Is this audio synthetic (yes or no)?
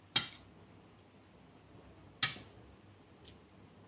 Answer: no